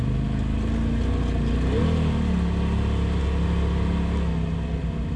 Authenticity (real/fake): real